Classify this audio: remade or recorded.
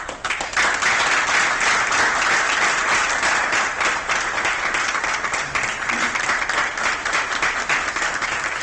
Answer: recorded